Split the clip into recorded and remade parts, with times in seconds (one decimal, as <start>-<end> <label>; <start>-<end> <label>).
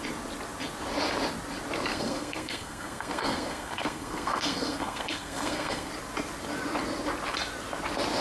0.0-1.9 recorded; 1.9-5.9 remade; 5.9-8.2 recorded